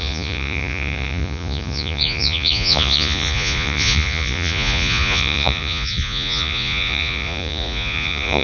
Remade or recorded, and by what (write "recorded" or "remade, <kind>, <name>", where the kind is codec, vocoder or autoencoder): remade, vocoder, Vocos